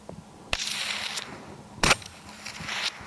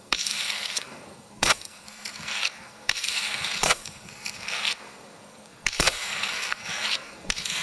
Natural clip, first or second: first